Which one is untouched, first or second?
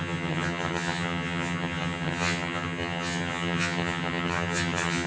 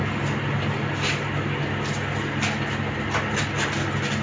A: second